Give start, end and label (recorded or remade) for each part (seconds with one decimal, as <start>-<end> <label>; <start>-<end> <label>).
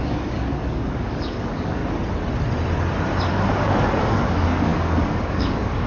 0.0-1.8 remade; 1.8-3.3 recorded; 3.3-5.9 remade